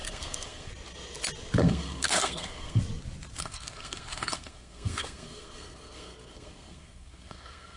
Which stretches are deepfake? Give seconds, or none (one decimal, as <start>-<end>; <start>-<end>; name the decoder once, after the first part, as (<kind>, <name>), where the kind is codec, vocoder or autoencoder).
0.0-0.7 (codec, SNAC); 1.6-2.8; 3.4-7.8